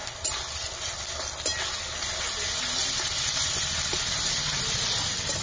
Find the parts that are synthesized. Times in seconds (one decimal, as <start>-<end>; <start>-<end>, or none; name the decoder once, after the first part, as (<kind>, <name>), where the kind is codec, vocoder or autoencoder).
none